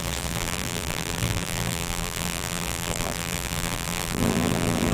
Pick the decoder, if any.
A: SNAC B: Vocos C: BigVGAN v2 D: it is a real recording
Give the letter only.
C